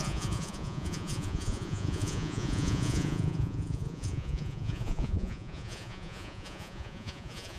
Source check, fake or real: fake